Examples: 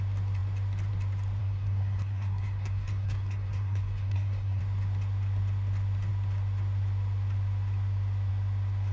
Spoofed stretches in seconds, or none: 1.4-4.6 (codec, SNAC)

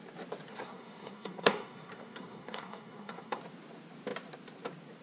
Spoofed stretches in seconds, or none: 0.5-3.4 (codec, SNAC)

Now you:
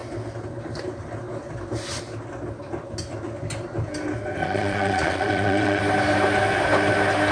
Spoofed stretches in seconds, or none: 4.4-5.8 (vocoder, Vocos)

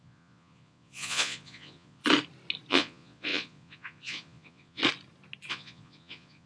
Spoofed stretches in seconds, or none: 0.0-2.0 (vocoder, Vocos); 2.7-4.8; 5.5-6.5

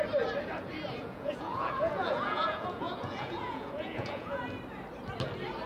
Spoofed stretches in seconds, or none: 1.0-4.4 (vocoder, Vocos)

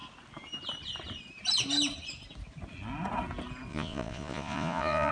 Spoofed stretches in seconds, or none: 3.7-5.1 (vocoder, Vocos)